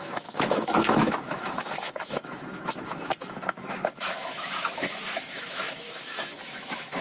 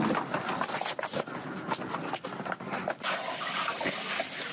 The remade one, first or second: first